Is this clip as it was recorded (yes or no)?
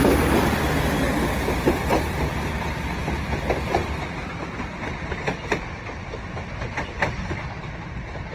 yes